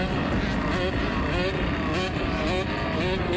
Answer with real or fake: real